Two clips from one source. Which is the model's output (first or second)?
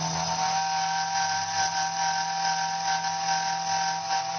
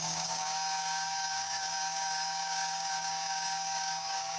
second